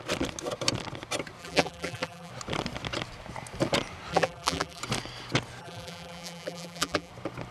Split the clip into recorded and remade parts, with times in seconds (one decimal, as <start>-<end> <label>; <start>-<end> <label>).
0.0-1.4 recorded; 1.4-2.3 remade; 2.3-4.1 recorded; 4.1-4.8 remade; 4.8-5.6 recorded; 5.6-7.1 remade; 7.1-7.5 recorded